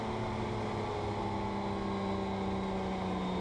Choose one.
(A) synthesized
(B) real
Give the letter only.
B